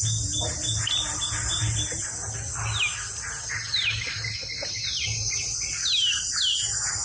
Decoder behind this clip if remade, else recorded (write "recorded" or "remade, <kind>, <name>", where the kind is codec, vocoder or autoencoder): recorded